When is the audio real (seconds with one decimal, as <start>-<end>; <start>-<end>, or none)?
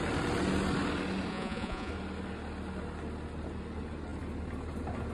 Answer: 0.0-1.3; 1.9-5.1